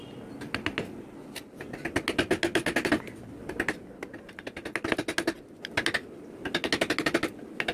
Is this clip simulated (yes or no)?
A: no